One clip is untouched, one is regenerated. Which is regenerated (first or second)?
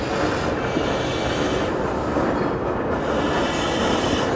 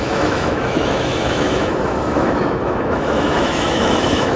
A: second